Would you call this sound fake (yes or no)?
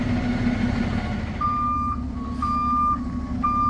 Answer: no